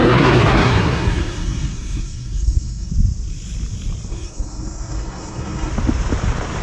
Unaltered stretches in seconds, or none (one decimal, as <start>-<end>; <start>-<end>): 2.9-4.1; 5.7-6.6